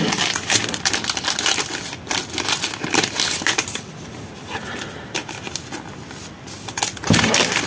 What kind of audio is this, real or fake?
fake